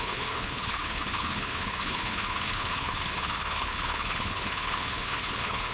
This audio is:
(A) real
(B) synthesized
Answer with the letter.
B